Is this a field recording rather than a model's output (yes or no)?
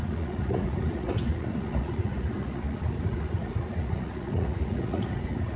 no